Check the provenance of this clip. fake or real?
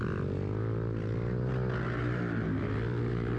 real